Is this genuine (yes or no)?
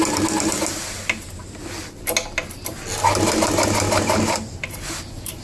yes